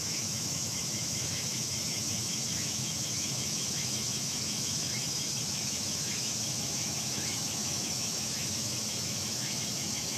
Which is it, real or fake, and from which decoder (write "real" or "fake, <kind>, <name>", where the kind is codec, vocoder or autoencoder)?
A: fake, autoencoder, DAC-VAE